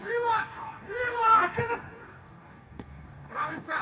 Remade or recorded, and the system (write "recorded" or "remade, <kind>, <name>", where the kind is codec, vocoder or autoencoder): remade, codec, DAC